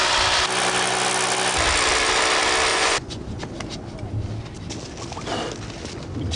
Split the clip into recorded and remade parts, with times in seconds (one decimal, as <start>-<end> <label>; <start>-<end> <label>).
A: 0.0-2.7 recorded; 2.7-3.4 remade; 3.4-6.4 recorded